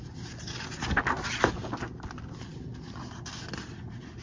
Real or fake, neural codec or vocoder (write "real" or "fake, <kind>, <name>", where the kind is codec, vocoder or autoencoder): real